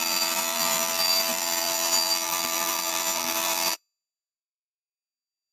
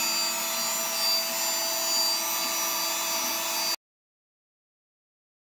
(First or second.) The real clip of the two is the second